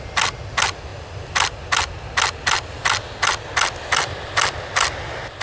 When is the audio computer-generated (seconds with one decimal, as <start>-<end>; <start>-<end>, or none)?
none